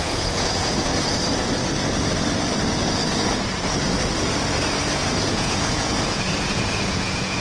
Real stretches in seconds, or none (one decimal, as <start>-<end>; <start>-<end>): 0.9-5.3